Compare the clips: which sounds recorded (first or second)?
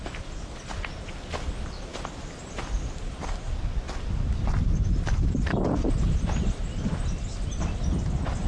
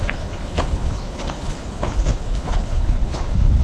first